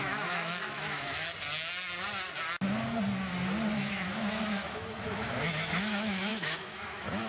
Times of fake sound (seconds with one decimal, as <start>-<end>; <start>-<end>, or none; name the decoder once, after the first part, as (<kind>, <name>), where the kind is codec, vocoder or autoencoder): 0.0-1.3 (autoencoder, DAC-VAE); 3.7-7.3